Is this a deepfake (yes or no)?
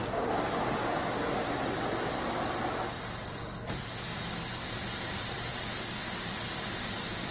yes